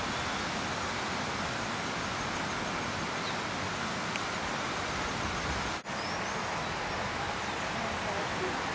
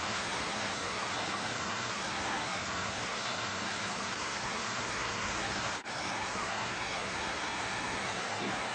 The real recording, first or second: first